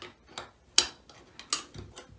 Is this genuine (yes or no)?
yes